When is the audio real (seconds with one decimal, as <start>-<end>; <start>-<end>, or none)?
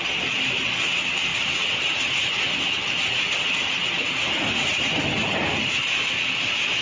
0.0-6.8